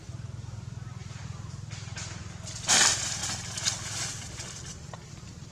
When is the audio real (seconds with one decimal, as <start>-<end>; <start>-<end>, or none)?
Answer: 3.2-4.7